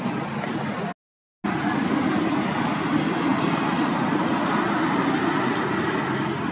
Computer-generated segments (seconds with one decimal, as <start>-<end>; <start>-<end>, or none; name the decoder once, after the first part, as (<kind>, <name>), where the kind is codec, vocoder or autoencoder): 3.3-5.0 (vocoder, BigVGAN v2)